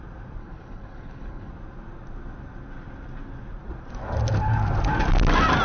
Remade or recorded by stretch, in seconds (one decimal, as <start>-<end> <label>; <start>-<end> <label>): 0.0-0.4 recorded; 0.4-1.5 remade; 1.5-5.6 recorded